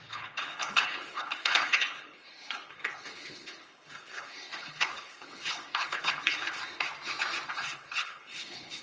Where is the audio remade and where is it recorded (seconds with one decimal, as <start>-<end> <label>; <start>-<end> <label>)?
0.0-6.6 remade; 6.6-7.5 recorded; 7.5-8.8 remade

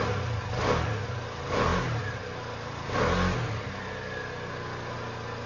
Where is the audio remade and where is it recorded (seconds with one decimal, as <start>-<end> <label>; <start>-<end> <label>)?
0.0-5.5 recorded

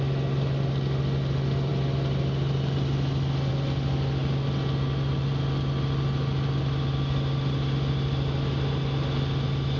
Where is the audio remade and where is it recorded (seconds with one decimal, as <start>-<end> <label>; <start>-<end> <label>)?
0.0-9.8 recorded

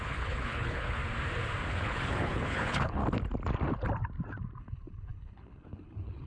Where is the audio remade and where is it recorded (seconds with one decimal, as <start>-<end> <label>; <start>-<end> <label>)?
0.0-1.0 remade; 1.0-1.7 recorded; 1.7-3.0 remade; 3.0-4.6 recorded; 4.6-6.3 remade